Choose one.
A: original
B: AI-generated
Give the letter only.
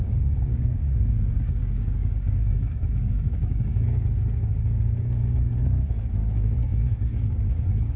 B